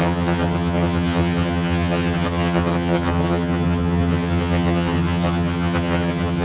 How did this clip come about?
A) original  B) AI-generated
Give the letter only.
B